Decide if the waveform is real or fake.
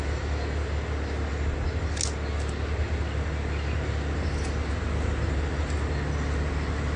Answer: real